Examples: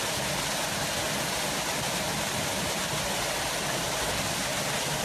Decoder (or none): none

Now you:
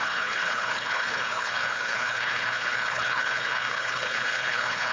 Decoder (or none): codec, HILCodec